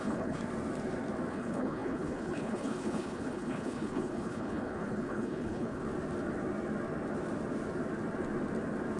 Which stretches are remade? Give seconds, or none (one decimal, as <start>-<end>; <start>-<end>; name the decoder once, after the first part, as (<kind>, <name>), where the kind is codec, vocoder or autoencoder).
0.0-0.4 (codec, HILCodec); 1.3-5.8